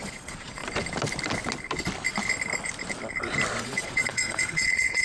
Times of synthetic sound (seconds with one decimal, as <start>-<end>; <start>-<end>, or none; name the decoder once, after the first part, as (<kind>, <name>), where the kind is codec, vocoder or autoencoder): 0.0-0.6 (vocoder, Vocos); 3.6-5.0